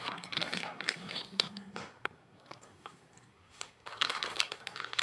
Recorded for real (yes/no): no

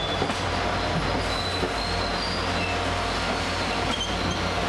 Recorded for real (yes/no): yes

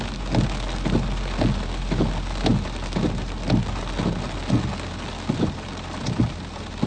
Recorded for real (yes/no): yes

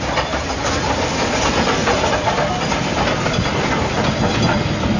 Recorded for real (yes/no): yes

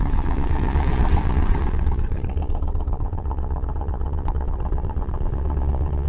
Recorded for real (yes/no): no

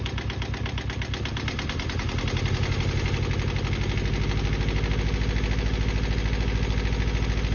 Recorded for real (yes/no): yes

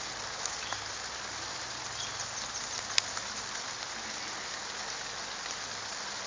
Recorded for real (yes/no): yes